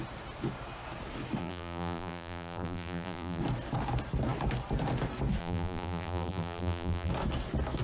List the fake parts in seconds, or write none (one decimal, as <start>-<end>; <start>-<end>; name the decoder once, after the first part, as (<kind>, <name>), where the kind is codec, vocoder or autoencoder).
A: 1.4-3.4 (vocoder, BigVGAN v2); 5.4-7.1